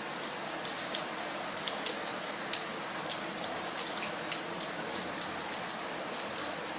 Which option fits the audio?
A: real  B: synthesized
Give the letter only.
A